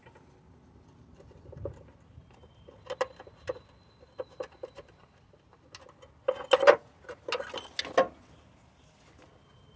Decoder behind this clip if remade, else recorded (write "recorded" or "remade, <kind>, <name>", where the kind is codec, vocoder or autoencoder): recorded